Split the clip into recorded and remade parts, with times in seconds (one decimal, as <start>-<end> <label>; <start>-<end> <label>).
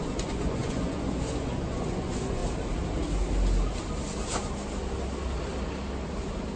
0.0-2.4 remade; 2.4-6.6 recorded